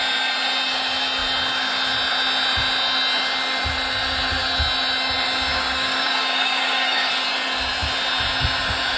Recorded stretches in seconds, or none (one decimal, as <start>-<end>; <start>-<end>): 0.0-5.5; 7.1-9.0